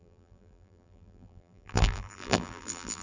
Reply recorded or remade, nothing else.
remade